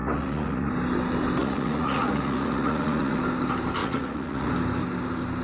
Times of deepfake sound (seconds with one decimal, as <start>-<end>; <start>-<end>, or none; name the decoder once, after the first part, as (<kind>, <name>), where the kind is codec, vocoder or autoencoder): 0.0-0.7 (vocoder, Vocos); 1.4-3.2; 3.8-4.5